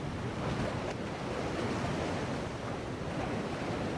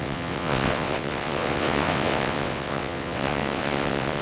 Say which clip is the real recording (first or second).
first